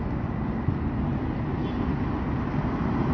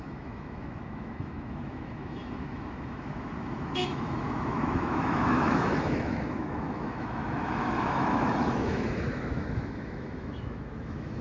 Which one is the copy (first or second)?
second